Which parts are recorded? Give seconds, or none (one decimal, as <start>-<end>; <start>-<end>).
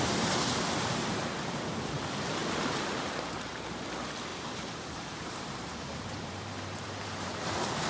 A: 0.0-2.4; 3.1-4.3; 7.5-7.9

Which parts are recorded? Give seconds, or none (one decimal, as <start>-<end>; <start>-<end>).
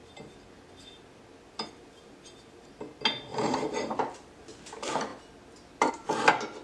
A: 0.0-3.3; 4.0-6.6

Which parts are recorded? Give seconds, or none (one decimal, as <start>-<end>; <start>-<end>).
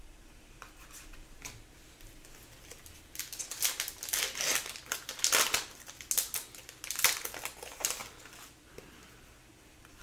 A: 0.0-10.0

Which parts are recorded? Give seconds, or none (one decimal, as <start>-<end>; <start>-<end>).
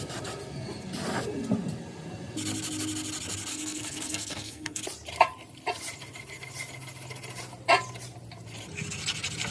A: 0.0-3.5; 4.8-9.5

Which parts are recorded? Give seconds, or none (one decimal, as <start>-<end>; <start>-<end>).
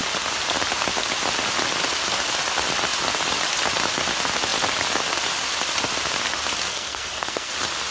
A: 0.0-6.7; 7.5-7.9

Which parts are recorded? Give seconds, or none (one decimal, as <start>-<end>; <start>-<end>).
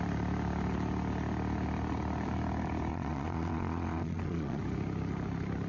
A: 0.0-2.9; 4.6-5.7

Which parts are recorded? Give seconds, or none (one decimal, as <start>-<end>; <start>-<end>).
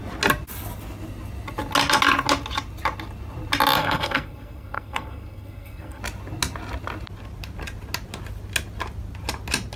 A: 0.0-3.8; 6.0-9.8